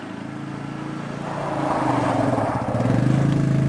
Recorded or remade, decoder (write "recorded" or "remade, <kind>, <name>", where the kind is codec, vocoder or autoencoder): recorded